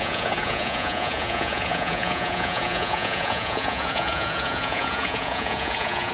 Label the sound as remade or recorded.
remade